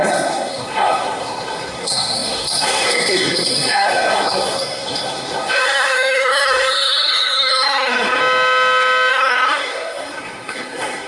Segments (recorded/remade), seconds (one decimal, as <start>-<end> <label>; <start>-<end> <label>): 0.0-8.2 remade; 8.2-9.1 recorded; 9.1-11.1 remade